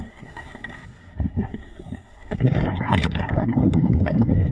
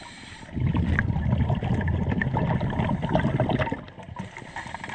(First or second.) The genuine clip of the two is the second